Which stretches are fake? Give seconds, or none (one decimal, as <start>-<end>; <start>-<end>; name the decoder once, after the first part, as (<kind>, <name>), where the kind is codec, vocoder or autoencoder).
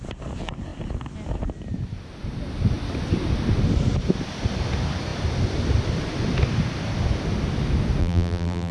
8.0-8.7 (vocoder, BigVGAN v2)